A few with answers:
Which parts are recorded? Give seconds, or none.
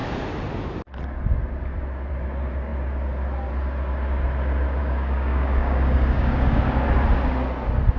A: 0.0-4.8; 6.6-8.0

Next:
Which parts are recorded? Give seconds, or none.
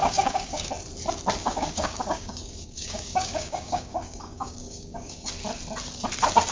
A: 0.7-1.4; 5.3-6.5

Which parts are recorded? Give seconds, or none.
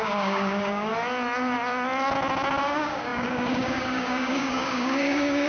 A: 0.9-2.6